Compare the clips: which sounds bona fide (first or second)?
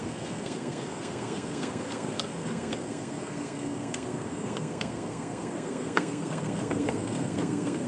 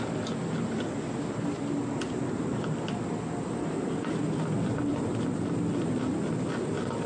second